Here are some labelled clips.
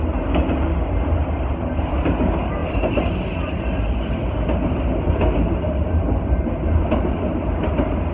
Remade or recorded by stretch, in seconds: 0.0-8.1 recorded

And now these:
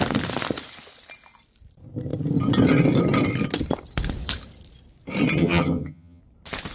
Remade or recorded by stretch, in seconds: 0.0-5.4 recorded; 5.4-6.2 remade; 6.2-6.7 recorded